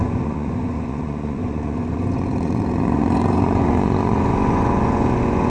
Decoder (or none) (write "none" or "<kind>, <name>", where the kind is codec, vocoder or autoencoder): vocoder, Vocos